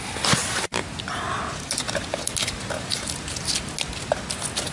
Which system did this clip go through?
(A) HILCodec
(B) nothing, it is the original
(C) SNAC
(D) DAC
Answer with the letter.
B